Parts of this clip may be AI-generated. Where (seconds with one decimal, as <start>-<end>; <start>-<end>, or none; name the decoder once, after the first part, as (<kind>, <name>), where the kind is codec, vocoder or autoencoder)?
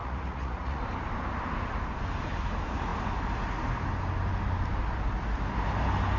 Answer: 0.0-0.8 (vocoder, Vocos)